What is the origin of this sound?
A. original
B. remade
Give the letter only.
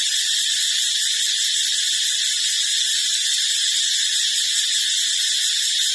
A